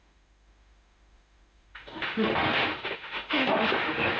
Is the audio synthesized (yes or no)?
yes